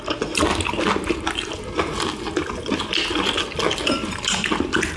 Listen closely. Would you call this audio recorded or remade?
recorded